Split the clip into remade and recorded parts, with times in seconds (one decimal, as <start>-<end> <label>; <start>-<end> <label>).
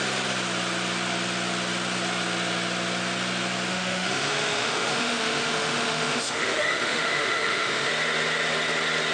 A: 0.0-3.7 recorded; 3.7-7.9 remade; 7.9-9.1 recorded